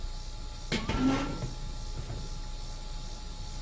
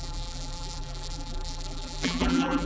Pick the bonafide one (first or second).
first